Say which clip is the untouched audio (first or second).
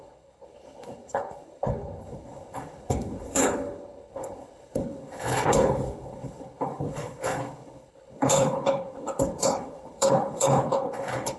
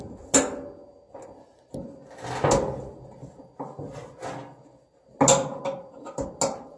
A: second